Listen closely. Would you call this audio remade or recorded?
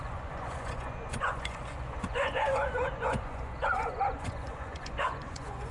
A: remade